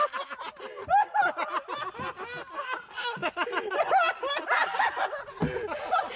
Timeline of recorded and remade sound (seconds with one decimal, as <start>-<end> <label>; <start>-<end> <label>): 0.0-6.2 recorded